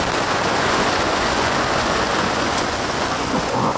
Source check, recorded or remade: remade